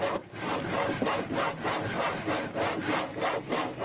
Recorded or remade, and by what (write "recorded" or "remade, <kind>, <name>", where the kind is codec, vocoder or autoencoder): recorded